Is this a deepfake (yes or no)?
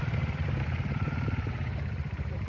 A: yes